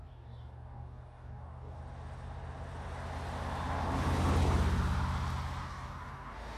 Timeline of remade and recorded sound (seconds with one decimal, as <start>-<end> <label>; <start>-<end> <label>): 0.0-1.8 remade; 1.8-5.6 recorded; 5.6-6.6 remade